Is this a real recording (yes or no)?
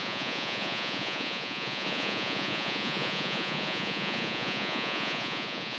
no